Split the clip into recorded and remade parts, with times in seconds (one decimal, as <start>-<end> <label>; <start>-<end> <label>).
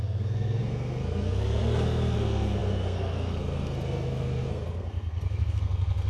0.0-6.1 remade